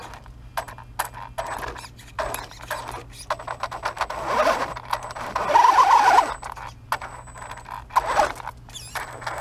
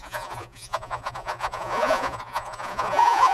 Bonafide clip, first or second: first